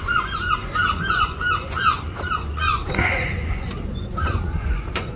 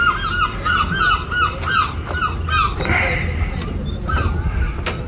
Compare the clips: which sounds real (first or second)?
second